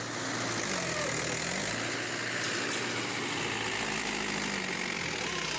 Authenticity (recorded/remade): recorded